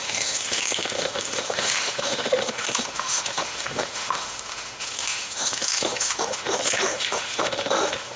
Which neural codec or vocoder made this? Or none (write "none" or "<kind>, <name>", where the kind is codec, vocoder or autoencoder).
autoencoder, DAC-VAE